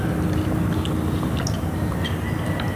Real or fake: real